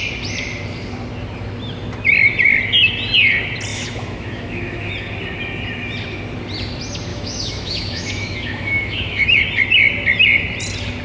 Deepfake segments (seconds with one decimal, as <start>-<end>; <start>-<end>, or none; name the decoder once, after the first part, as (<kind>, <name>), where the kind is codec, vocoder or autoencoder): 3.7-4.9 (autoencoder, DAC-VAE); 7.1-9.4